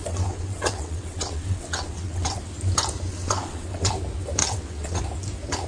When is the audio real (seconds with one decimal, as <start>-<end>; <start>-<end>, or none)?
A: 2.4-3.1; 3.9-4.4; 5.0-5.7